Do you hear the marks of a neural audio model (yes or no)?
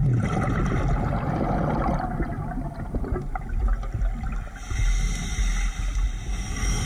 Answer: no